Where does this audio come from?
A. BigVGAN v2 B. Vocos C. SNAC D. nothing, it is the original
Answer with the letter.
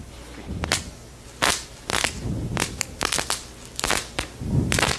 D